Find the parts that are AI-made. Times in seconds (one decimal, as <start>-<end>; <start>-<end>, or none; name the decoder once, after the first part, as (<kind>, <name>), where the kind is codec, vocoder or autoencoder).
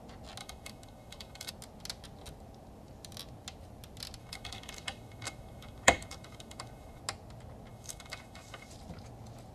0.4-1.5 (autoencoder, DAC-VAE); 4.2-7.0; 7.7-8.7